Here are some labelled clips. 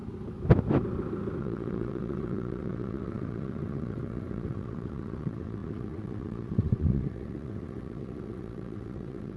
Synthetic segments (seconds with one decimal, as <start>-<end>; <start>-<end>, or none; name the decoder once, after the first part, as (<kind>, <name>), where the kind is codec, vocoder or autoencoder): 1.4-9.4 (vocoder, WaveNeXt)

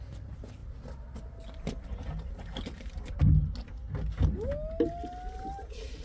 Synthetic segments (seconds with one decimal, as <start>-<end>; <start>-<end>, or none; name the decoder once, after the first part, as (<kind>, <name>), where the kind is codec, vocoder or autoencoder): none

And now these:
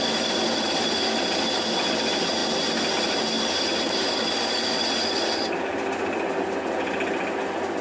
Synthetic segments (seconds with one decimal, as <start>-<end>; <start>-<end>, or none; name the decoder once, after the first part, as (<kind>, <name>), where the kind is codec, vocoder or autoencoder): none

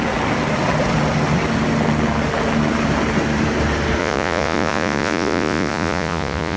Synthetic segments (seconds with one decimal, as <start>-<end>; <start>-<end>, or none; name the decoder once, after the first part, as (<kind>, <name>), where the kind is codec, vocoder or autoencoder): 4.0-6.6 (vocoder, Vocos)